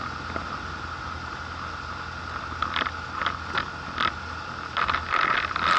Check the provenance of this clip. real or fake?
real